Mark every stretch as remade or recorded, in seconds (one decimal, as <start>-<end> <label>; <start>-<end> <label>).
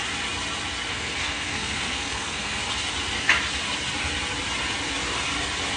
0.0-0.9 recorded; 0.9-2.6 remade; 2.6-5.8 recorded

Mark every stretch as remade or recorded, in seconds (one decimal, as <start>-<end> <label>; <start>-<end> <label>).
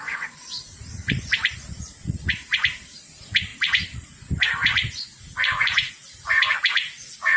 0.0-7.4 remade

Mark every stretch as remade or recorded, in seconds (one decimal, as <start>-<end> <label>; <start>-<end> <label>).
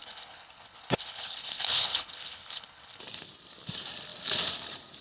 0.0-3.0 remade; 3.0-5.0 recorded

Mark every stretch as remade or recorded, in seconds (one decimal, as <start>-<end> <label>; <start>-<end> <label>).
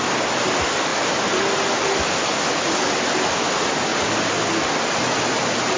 0.0-5.8 recorded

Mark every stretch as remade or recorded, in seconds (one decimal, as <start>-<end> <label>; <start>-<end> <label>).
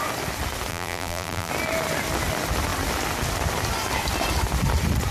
0.0-0.7 recorded; 0.7-1.5 remade; 1.5-5.1 recorded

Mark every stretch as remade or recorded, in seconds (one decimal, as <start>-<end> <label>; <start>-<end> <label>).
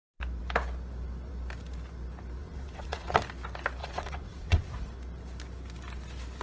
0.0-2.4 recorded; 2.4-3.2 remade; 3.2-3.8 recorded; 3.8-4.7 remade; 4.7-6.4 recorded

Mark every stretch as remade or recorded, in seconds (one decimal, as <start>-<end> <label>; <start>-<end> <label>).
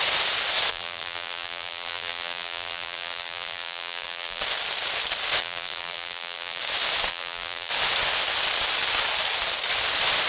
0.0-0.7 recorded; 0.7-4.4 remade; 4.4-5.4 recorded; 5.4-6.6 remade; 6.6-7.1 recorded; 7.1-7.7 remade; 7.7-10.3 recorded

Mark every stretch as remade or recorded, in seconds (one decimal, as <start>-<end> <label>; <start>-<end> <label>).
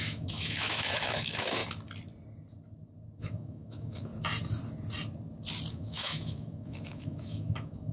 0.0-1.6 remade; 1.6-3.2 recorded; 3.2-4.1 remade; 4.1-5.7 recorded; 5.7-7.9 remade